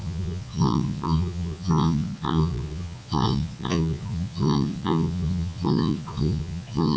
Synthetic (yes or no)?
yes